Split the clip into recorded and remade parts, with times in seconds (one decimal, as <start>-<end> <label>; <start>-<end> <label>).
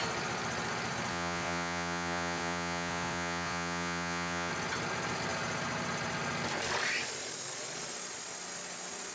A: 0.0-1.1 recorded; 1.1-4.5 remade; 4.5-9.1 recorded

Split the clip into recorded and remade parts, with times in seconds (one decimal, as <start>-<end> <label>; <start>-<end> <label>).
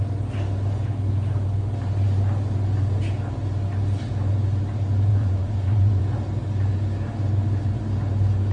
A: 0.0-5.1 recorded; 5.1-6.0 remade; 6.0-8.5 recorded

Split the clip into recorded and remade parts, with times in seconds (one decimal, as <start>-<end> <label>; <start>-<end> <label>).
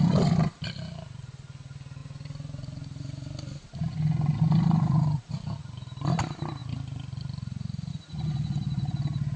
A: 0.0-9.4 recorded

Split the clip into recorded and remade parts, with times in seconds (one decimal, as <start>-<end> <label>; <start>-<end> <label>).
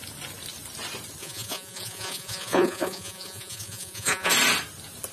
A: 0.0-1.2 recorded; 1.2-4.3 remade; 4.3-5.1 recorded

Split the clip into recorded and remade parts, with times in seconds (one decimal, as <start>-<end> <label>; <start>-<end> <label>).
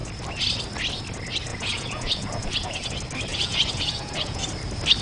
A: 0.0-1.5 recorded; 1.5-2.9 remade; 2.9-3.3 recorded; 3.3-4.4 remade; 4.4-5.0 recorded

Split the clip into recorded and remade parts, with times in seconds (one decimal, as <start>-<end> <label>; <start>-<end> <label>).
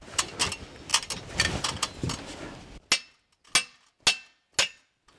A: 0.0-5.2 recorded